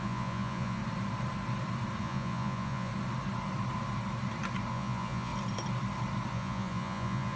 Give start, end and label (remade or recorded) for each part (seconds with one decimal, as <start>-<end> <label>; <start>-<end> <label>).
0.0-0.8 remade; 0.8-2.0 recorded; 2.0-2.9 remade; 2.9-4.7 recorded; 4.7-5.3 remade; 5.3-6.3 recorded; 6.3-7.4 remade